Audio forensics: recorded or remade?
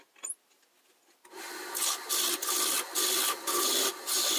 recorded